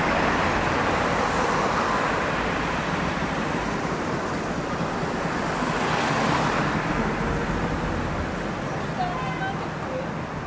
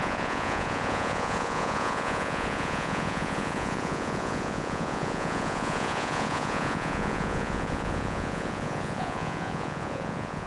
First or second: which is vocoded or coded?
second